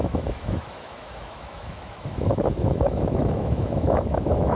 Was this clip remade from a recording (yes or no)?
yes